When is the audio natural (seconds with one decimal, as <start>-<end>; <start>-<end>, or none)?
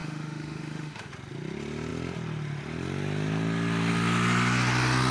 1.1-5.1